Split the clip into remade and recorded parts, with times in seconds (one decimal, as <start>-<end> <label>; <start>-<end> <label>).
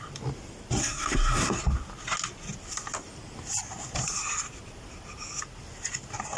0.0-0.8 recorded; 0.8-1.6 remade; 1.6-6.4 recorded